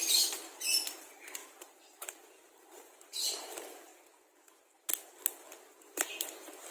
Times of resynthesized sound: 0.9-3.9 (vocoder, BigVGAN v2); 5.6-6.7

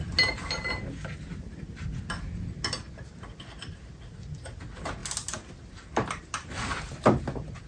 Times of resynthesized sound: none

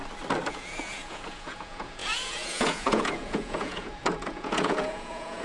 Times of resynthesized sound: 0.5-5.4 (vocoder, Vocos)

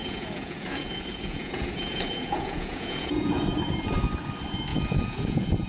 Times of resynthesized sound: 0.0-3.4 (vocoder, Vocos); 4.7-5.7

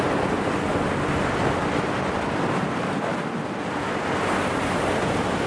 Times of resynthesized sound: none

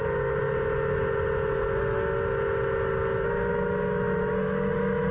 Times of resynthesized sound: 3.5-5.1 (autoencoder, DAC-VAE)

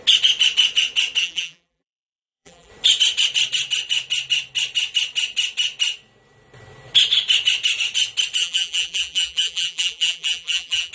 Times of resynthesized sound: 1.2-2.7 (vocoder, BigVGAN v2); 8.4-10.9